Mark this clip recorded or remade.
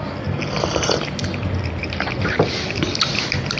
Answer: recorded